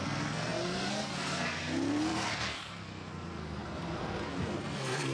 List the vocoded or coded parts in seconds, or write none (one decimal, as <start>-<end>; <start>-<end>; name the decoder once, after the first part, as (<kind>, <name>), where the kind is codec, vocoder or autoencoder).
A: 0.0-5.1 (codec, SNAC)